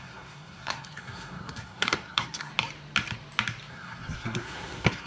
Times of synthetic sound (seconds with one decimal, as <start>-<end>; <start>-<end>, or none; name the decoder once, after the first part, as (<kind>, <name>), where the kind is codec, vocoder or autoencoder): 0.0-2.5 (codec, SNAC); 3.7-5.1